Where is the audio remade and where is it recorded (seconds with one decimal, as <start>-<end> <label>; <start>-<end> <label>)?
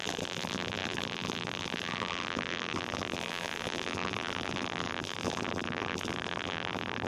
0.0-7.1 remade